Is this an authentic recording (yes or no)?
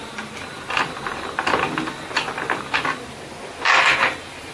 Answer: yes